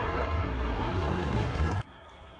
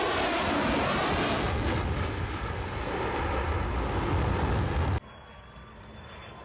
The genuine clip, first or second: second